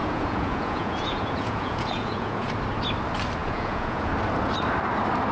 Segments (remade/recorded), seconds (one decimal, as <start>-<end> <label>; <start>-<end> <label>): 0.0-2.5 remade; 2.5-3.4 recorded; 3.4-4.1 remade; 4.1-5.3 recorded